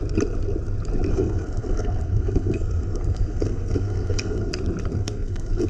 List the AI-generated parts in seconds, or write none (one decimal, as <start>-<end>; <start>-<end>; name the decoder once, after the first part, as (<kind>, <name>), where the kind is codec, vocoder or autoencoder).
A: 1.1-4.5 (codec, SNAC); 4.9-5.7